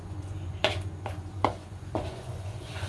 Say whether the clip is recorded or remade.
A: remade